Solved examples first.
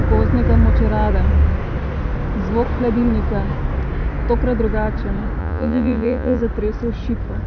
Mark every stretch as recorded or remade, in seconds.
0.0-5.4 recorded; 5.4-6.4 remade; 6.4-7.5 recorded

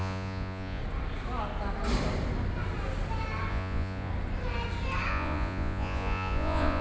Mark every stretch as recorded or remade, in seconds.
0.0-0.8 remade; 0.8-3.5 recorded; 3.5-4.1 remade; 4.1-5.1 recorded; 5.1-6.8 remade

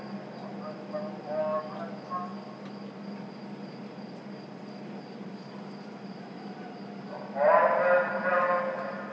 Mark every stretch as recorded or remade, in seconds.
0.0-9.1 recorded